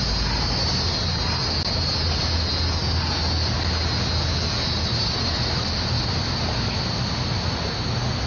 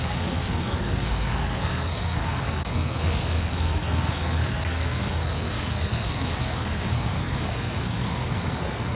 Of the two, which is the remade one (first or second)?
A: second